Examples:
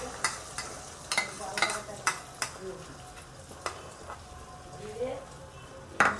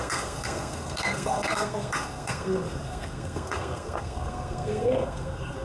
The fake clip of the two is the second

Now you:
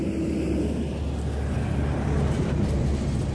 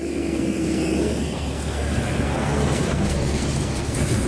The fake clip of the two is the second